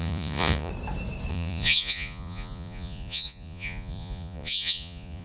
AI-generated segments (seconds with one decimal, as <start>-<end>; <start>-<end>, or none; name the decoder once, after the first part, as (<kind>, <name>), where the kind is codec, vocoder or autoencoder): 0.0-0.7 (vocoder, Vocos); 1.3-5.2